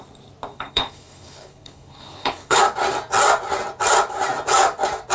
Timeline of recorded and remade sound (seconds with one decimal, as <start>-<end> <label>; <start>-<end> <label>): 0.0-0.5 recorded; 0.5-2.6 remade; 2.6-5.1 recorded